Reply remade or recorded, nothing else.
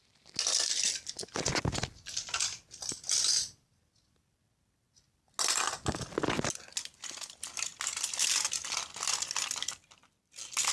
recorded